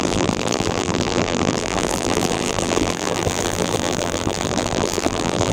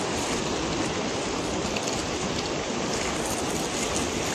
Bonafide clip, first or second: second